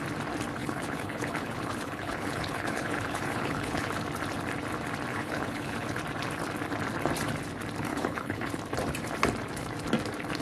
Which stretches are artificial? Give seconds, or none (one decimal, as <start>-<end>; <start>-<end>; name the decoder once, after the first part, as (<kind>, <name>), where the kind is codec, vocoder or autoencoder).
0.6-3.9 (codec, HILCodec); 5.1-6.0; 7.9-8.5